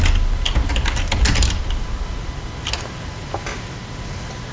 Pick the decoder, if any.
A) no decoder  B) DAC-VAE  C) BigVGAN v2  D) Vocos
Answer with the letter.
A